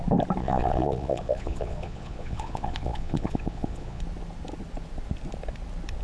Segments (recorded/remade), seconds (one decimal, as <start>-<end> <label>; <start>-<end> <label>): 0.0-0.4 recorded; 0.4-4.0 remade; 4.0-6.0 recorded